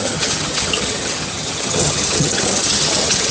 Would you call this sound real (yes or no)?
no